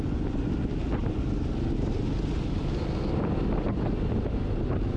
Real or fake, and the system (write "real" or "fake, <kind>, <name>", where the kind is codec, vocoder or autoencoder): real